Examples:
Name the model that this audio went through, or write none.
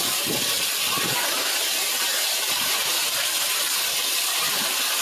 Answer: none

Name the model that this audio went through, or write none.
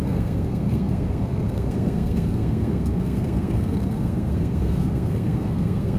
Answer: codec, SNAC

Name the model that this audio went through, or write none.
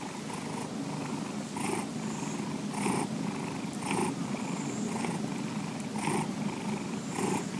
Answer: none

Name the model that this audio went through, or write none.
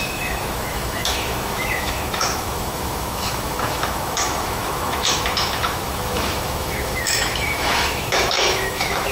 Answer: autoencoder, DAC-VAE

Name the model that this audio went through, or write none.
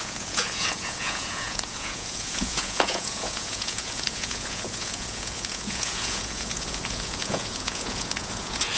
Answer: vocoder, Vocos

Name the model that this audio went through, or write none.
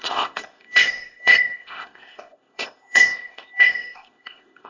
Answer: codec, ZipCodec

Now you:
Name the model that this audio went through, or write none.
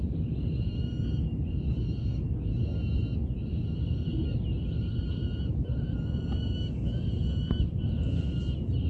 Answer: none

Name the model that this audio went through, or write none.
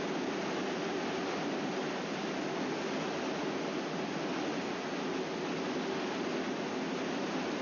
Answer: none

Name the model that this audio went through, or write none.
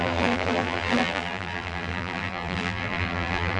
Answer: vocoder, BigVGAN v2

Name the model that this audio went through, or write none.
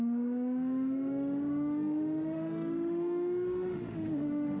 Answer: autoencoder, DAC-VAE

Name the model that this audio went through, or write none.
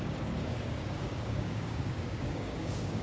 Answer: codec, DAC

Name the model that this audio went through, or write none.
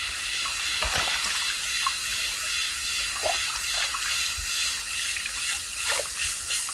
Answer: none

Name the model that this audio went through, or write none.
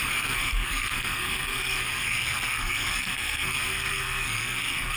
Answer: codec, SNAC